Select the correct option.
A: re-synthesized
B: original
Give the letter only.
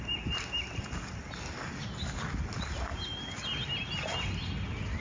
B